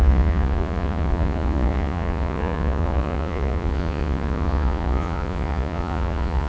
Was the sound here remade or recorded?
remade